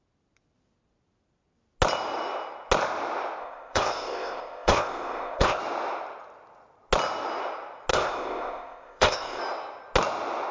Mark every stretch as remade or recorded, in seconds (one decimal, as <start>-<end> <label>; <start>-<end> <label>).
0.0-3.4 recorded; 3.4-5.6 remade; 5.6-7.9 recorded; 7.9-9.4 remade; 9.4-10.5 recorded